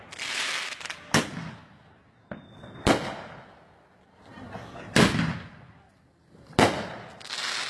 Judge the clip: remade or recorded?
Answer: recorded